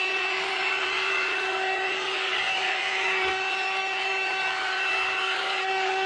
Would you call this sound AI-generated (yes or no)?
yes